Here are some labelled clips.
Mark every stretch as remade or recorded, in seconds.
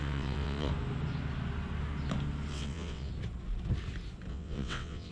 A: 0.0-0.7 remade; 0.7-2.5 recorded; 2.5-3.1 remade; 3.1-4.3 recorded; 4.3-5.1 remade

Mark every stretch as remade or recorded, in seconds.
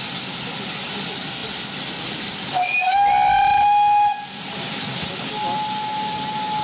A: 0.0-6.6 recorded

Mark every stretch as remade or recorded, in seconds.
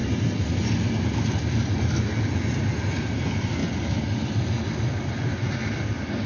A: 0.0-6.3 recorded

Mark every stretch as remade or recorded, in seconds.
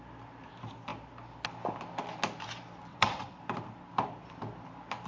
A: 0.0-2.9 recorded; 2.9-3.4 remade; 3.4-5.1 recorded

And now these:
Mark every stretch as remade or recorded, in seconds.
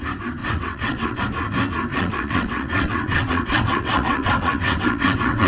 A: 0.0-0.4 recorded; 0.4-1.2 remade; 1.2-1.9 recorded; 1.9-5.5 remade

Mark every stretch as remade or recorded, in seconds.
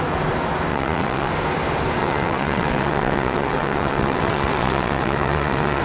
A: 0.0-0.7 recorded; 0.7-1.3 remade; 1.3-2.0 recorded; 2.0-5.8 remade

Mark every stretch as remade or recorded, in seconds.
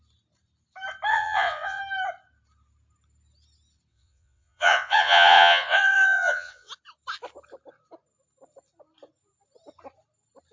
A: 0.0-1.1 recorded; 1.1-1.8 remade; 1.8-3.9 recorded; 3.9-6.7 remade; 6.7-10.5 recorded